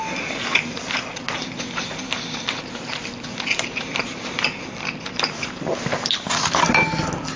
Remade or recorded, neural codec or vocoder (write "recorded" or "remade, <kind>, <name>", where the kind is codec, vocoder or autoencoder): recorded